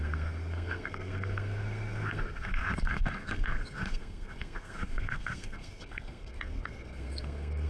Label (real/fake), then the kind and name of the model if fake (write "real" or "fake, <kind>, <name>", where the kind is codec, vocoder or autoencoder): fake, codec, SNAC